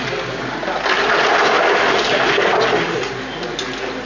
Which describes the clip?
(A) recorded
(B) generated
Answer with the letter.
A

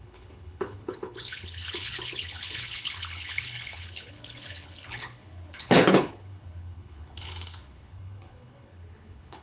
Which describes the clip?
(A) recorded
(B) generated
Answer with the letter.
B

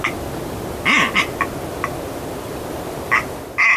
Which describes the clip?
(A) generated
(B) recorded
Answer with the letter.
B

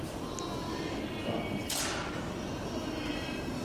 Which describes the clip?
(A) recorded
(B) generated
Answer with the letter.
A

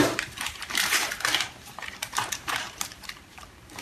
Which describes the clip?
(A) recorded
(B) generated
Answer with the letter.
B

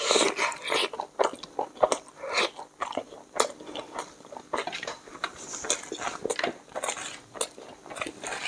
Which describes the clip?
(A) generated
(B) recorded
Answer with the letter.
B